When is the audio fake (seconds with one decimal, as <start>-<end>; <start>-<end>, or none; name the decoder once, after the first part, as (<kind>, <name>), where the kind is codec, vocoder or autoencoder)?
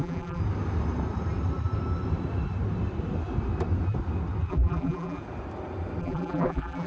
0.0-0.4 (vocoder, BigVGAN v2); 4.5-5.2; 6.0-6.9